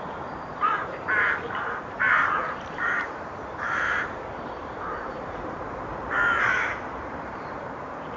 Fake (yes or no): yes